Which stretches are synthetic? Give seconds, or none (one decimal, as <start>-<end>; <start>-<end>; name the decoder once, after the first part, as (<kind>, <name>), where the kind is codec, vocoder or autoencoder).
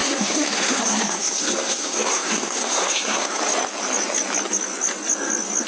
0.0-3.4 (codec, SNAC)